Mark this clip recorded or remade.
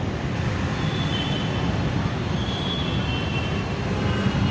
recorded